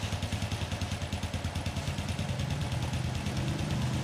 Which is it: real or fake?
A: real